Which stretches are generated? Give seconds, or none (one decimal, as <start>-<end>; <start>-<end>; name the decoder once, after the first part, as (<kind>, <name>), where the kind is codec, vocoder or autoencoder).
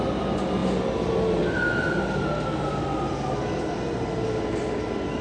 none